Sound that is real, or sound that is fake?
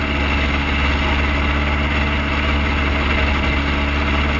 real